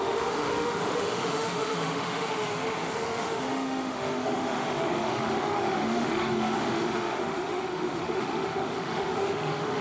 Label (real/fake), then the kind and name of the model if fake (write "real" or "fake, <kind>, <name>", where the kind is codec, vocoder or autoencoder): fake, autoencoder, DAC-VAE